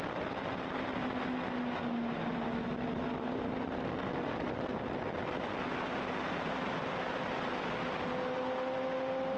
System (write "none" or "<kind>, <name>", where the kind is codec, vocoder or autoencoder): none